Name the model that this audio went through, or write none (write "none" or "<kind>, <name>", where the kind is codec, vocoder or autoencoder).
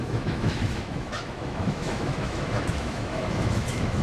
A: autoencoder, DAC-VAE